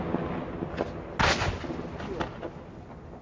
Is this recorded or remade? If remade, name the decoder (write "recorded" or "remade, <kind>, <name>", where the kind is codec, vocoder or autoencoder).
recorded